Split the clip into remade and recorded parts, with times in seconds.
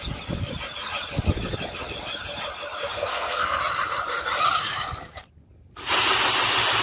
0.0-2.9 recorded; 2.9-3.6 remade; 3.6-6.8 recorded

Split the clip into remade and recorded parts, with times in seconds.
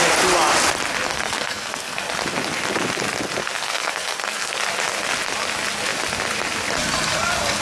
0.0-1.1 recorded; 1.1-2.1 remade; 2.1-3.4 recorded; 3.4-4.6 remade; 4.6-7.6 recorded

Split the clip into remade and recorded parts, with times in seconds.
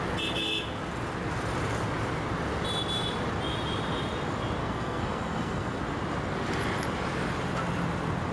0.0-4.6 recorded; 4.6-5.8 remade; 5.8-8.3 recorded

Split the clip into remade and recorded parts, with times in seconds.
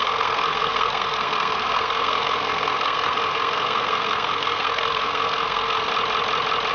0.0-5.9 remade; 5.9-6.7 recorded